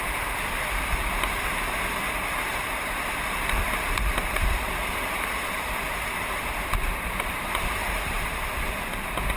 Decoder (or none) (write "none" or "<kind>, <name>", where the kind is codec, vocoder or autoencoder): vocoder, BigVGAN v2